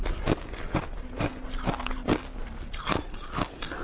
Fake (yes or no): no